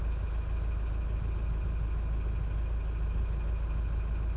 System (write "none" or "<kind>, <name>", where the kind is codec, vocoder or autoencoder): none